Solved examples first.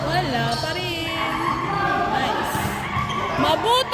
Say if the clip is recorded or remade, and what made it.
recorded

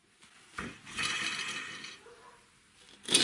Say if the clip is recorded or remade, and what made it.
recorded